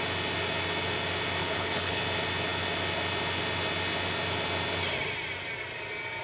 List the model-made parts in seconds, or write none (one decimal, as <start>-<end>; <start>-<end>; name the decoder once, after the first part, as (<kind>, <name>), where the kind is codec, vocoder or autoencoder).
1.4-2.0 (codec, HILCodec)